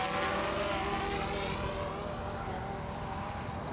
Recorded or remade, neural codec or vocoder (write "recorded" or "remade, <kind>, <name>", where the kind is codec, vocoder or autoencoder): recorded